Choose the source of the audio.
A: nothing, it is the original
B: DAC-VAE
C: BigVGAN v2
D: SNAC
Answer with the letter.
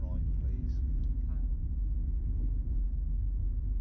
A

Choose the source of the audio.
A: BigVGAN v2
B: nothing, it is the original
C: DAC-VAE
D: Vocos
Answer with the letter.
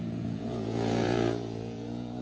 D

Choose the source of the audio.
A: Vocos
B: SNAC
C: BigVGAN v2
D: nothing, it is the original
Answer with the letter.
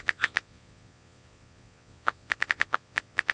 A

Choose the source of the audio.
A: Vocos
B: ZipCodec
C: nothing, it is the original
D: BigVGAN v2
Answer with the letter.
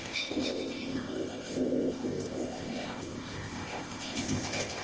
B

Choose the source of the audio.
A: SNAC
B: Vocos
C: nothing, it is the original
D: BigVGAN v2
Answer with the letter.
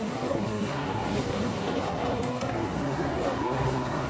A